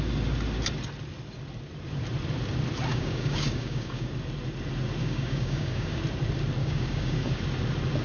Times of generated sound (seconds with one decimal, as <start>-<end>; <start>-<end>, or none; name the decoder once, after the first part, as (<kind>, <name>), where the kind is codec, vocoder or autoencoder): 2.9-4.1 (codec, DAC); 5.0-6.0; 6.6-7.4